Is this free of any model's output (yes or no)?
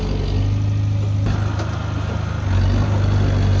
yes